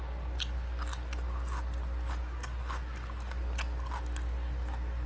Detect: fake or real real